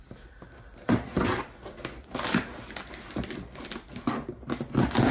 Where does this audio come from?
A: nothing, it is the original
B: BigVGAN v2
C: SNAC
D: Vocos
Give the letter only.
A